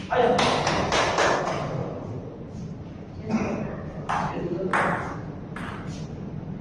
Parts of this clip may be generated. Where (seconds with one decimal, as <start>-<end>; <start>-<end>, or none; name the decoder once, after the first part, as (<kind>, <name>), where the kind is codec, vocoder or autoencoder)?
none